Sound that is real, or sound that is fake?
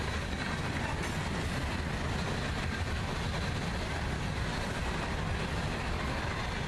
real